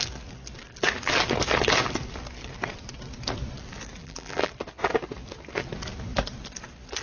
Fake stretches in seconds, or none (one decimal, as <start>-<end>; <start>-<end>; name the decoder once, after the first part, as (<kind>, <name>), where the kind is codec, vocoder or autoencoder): 4.0-4.5 (vocoder, BigVGAN v2)